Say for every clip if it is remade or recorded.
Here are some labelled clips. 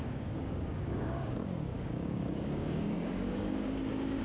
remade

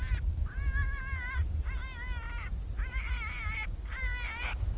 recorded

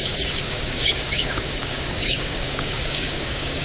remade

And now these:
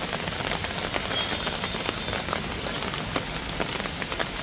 recorded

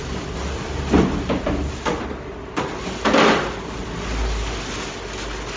recorded